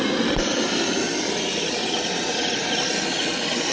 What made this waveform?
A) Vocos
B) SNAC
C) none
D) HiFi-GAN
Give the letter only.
C